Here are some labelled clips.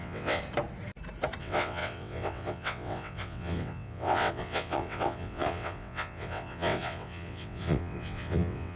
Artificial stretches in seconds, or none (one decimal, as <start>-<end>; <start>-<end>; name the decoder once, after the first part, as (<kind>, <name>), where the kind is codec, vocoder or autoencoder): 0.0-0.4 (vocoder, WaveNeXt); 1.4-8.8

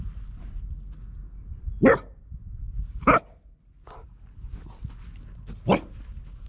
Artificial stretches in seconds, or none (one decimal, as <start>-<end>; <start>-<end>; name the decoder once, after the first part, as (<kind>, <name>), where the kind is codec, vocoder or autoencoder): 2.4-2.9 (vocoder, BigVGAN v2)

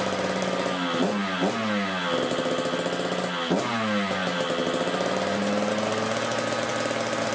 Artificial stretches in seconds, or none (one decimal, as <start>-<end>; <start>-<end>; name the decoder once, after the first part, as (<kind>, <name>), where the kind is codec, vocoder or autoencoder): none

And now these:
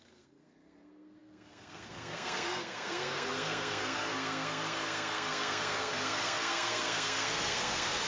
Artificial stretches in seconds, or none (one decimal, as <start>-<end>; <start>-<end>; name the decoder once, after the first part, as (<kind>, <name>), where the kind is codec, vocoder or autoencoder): 0.0-8.1 (codec, SNAC)

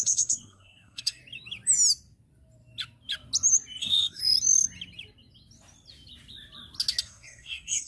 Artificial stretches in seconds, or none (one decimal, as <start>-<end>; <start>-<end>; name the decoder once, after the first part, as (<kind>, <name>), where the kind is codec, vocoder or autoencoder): 0.0-1.2 (codec, SNAC); 3.8-4.2; 7.0-7.9

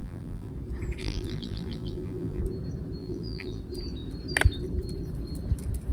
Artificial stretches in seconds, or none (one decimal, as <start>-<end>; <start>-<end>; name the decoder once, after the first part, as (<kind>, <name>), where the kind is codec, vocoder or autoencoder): 0.0-0.5 (vocoder, BigVGAN v2); 1.0-2.4; 3.0-3.6

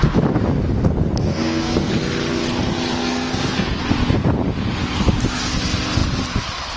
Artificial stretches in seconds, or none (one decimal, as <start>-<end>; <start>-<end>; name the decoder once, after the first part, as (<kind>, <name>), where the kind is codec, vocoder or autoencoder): 1.3-1.9 (codec, SNAC); 3.0-3.8